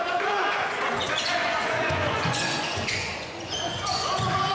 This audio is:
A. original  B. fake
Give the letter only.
B